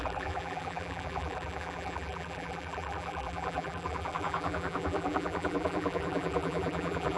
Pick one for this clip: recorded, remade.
remade